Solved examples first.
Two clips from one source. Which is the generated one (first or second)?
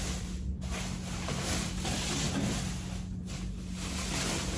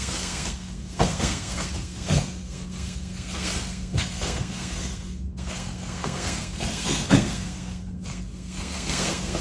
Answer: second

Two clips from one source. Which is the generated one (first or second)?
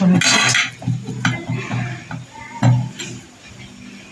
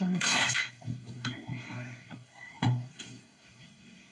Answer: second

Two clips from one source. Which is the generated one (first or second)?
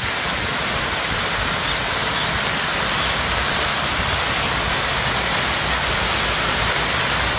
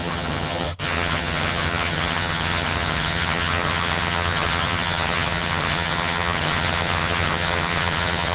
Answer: second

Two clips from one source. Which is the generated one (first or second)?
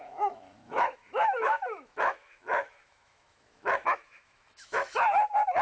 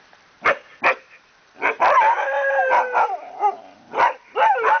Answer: first